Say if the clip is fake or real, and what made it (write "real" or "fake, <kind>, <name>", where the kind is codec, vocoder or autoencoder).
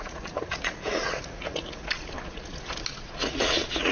fake, vocoder, Vocos